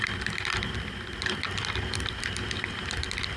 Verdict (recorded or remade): recorded